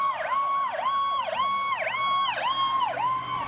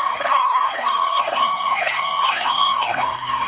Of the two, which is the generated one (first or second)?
second